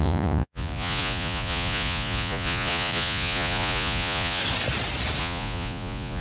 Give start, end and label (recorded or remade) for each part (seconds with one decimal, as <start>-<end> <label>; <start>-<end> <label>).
0.0-4.4 remade; 4.4-5.2 recorded; 5.2-6.2 remade